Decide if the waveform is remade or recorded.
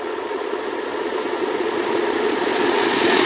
remade